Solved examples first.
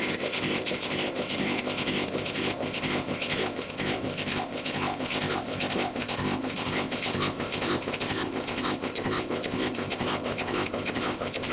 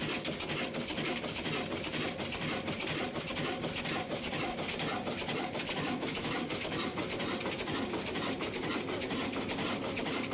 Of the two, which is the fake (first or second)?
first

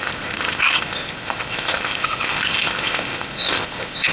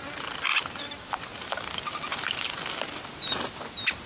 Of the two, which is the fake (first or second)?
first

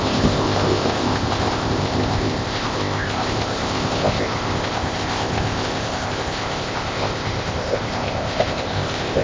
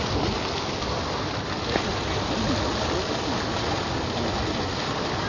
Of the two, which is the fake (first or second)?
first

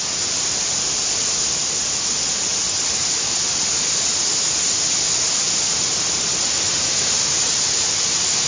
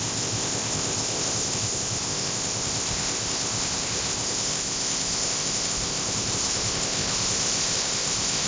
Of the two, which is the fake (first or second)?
second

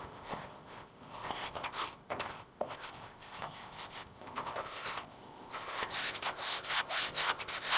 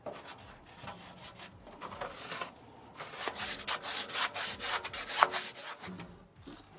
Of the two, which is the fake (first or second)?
first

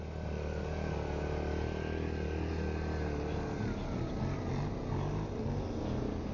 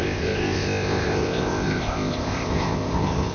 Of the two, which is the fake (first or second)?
second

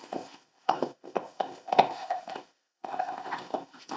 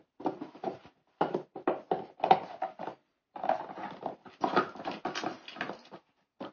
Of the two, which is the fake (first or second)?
first